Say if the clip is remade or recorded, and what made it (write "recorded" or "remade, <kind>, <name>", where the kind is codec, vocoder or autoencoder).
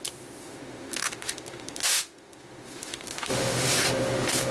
remade, autoencoder, DAC-VAE